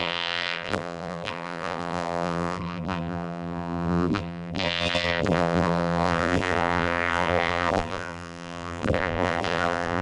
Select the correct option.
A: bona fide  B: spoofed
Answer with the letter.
B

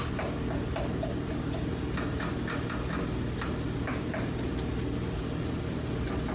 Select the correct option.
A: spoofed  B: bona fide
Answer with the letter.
B